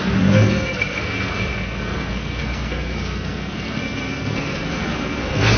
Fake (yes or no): yes